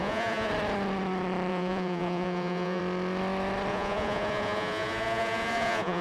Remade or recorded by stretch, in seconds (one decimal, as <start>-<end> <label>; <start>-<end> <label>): 0.0-0.5 remade; 0.5-1.5 recorded; 1.5-2.8 remade; 2.8-3.7 recorded; 3.7-6.0 remade